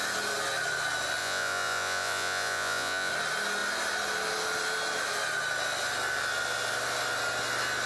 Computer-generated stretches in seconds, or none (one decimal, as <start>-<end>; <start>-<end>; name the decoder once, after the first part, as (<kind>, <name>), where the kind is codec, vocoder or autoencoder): 1.2-3.1 (vocoder, Vocos)